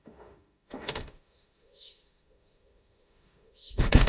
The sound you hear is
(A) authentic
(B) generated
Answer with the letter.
B